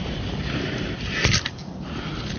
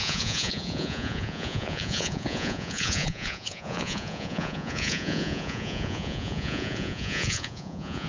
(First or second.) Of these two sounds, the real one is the first